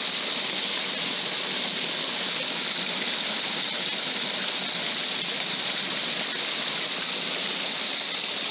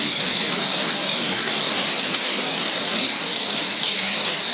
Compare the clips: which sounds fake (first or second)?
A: second